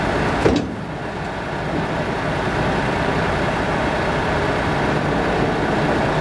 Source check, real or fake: real